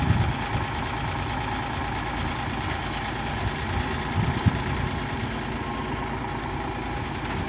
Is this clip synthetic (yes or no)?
no